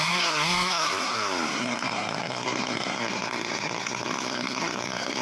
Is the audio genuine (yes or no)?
no